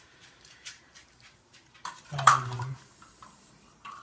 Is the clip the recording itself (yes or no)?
no